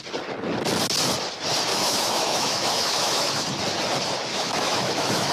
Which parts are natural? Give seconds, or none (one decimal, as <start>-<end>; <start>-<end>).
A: 0.0-1.7; 3.3-4.3